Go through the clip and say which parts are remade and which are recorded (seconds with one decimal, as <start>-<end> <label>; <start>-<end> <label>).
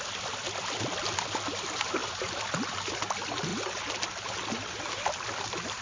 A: 0.0-5.8 recorded